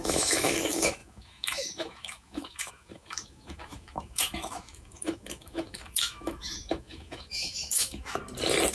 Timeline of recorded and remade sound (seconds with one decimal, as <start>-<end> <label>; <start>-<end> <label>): 0.0-8.2 remade; 8.2-8.7 recorded